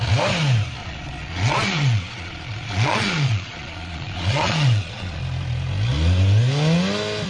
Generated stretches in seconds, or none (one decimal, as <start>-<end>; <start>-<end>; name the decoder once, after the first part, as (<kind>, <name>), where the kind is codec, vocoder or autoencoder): 0.8-5.2 (vocoder, Vocos)